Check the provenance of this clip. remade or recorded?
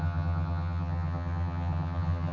remade